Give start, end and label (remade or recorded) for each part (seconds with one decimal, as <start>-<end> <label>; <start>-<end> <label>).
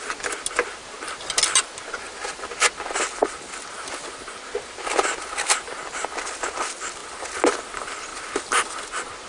0.0-9.3 recorded